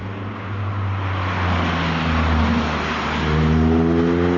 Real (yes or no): yes